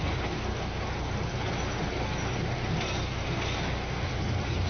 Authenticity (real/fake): real